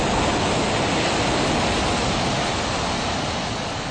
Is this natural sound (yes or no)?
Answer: yes